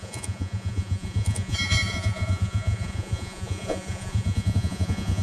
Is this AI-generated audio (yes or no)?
yes